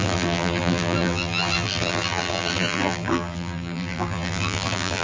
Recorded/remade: remade